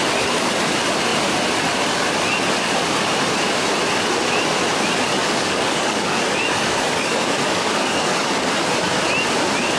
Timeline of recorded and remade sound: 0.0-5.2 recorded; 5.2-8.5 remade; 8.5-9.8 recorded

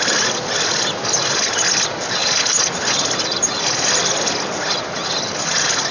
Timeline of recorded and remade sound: 0.0-5.9 recorded